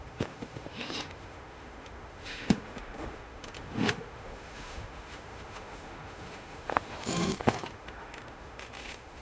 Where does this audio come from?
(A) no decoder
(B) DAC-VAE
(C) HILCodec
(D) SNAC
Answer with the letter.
B